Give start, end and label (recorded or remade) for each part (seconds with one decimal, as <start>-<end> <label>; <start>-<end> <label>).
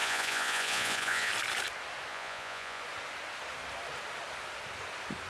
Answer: 0.0-1.3 remade; 1.3-2.1 recorded; 2.1-2.8 remade; 2.8-5.3 recorded